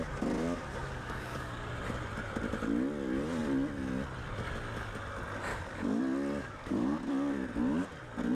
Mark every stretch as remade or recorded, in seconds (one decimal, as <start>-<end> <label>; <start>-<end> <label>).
0.0-0.8 recorded; 0.8-1.7 remade; 1.7-5.5 recorded; 5.5-6.0 remade; 6.0-6.4 recorded; 6.4-7.1 remade; 7.1-8.3 recorded

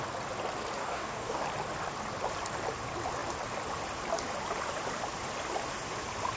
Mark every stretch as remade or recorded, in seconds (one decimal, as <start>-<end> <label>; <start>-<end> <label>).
0.0-0.8 recorded; 0.8-1.4 remade; 1.4-6.4 recorded

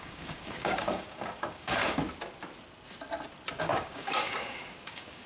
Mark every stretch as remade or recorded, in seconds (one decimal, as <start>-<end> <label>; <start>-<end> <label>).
0.0-1.8 remade; 1.8-3.6 recorded; 3.6-5.3 remade

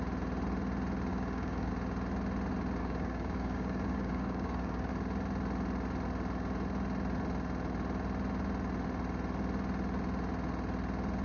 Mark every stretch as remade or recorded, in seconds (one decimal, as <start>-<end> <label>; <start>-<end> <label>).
0.0-1.1 recorded; 1.1-1.7 remade; 1.7-2.8 recorded; 2.8-4.9 remade; 4.9-11.2 recorded

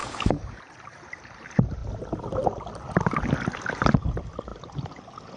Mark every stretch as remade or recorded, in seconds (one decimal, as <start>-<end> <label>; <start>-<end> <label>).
0.0-0.6 remade; 0.6-5.4 recorded

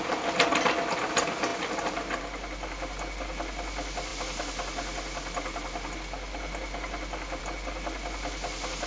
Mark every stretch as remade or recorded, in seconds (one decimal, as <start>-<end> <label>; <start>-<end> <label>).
0.0-8.9 recorded

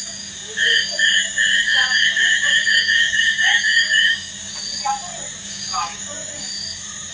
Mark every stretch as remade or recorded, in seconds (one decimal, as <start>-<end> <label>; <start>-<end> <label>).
0.0-4.5 remade; 4.5-5.4 recorded; 5.4-6.5 remade; 6.5-7.1 recorded

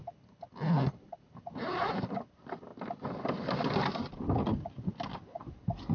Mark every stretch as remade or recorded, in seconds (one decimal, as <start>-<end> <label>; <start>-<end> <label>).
0.0-5.9 recorded